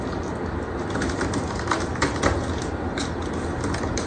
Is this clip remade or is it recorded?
recorded